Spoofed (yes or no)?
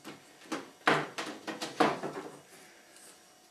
no